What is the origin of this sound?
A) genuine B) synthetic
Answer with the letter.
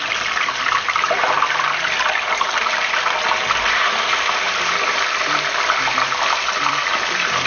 B